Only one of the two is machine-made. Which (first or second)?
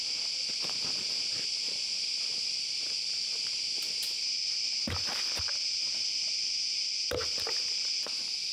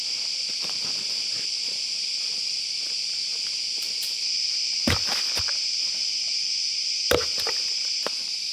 second